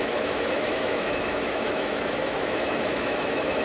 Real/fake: fake